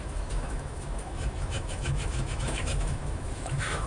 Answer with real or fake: fake